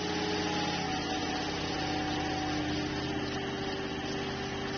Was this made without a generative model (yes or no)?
yes